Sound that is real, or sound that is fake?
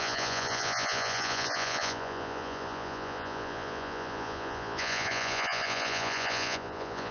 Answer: fake